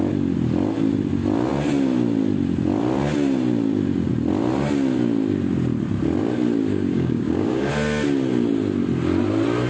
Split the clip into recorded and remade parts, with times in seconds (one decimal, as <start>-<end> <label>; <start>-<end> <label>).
0.0-6.7 recorded; 6.7-7.7 remade; 7.7-9.7 recorded